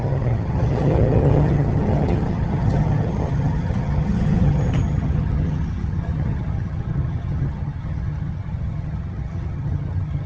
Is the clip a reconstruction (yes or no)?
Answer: yes